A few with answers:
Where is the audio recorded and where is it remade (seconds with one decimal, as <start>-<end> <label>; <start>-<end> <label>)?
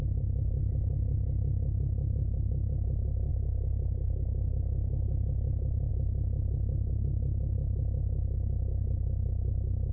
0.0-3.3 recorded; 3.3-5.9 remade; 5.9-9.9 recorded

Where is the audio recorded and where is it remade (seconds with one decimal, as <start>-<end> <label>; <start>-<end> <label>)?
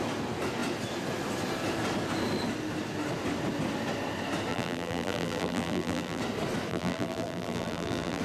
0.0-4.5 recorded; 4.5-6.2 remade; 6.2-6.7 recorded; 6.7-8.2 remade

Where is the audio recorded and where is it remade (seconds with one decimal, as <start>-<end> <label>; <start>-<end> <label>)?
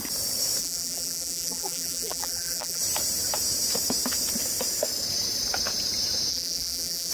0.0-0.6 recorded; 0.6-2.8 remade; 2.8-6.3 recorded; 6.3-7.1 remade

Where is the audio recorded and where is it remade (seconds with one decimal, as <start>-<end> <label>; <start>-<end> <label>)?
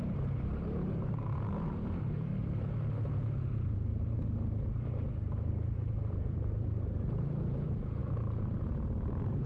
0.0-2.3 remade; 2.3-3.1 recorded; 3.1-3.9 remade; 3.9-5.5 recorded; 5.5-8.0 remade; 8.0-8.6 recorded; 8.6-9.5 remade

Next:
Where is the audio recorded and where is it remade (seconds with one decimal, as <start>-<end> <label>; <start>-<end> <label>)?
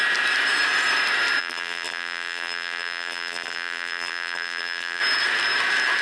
0.0-1.4 recorded; 1.4-5.0 remade; 5.0-6.0 recorded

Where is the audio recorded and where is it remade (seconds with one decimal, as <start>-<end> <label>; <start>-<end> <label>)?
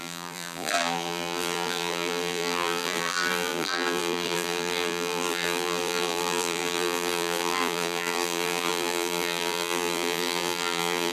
0.0-11.1 remade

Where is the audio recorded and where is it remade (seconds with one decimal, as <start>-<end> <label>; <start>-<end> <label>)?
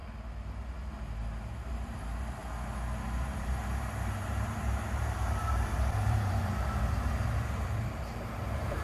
0.0-1.7 recorded; 1.7-2.4 remade; 2.4-3.2 recorded; 3.2-8.8 remade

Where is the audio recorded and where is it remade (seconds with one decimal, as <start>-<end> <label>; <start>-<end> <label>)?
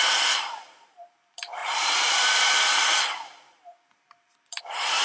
0.0-5.0 remade